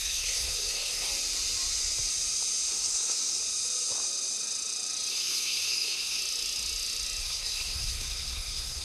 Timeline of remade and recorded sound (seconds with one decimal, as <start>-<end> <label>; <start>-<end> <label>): 0.0-1.1 remade; 1.1-2.7 recorded; 2.7-3.4 remade; 3.4-5.1 recorded; 5.1-6.2 remade; 6.2-7.2 recorded; 7.2-8.8 remade